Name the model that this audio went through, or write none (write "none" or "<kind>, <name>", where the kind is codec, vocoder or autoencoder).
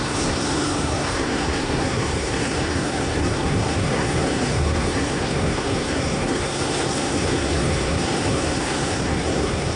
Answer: codec, SNAC